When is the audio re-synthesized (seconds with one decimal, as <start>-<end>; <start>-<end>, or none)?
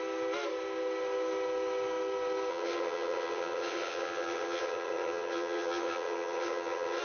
2.5-7.0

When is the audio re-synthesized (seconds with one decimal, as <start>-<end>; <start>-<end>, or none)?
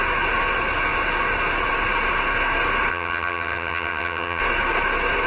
2.9-4.4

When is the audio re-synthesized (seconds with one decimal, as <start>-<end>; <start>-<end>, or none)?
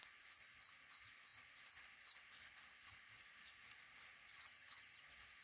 4.3-5.0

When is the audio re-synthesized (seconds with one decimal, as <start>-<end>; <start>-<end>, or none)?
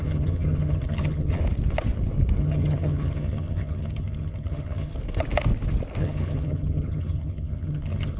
0.0-1.4; 2.4-5.0; 6.0-8.2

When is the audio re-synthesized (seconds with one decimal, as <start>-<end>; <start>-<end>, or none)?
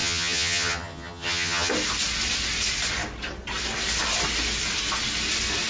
0.0-1.7